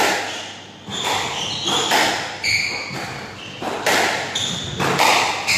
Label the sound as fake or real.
real